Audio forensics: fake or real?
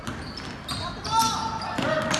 real